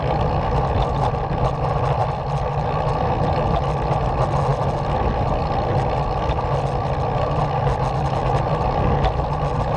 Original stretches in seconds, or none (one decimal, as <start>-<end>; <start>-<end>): 0.0-9.8